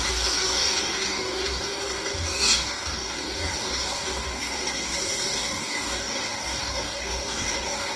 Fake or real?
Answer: fake